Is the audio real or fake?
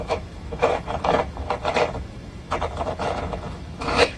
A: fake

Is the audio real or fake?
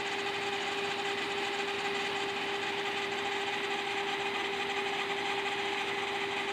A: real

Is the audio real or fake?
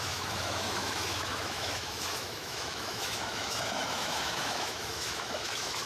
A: fake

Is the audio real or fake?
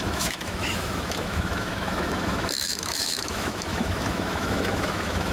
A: fake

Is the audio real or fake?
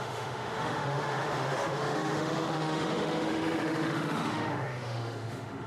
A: fake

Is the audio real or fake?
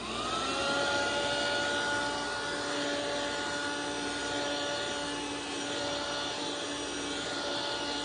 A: real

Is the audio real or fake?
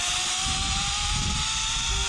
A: real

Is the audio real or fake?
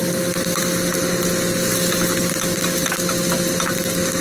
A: real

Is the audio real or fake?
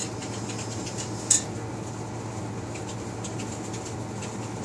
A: real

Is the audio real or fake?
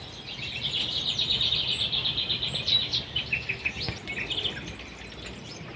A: real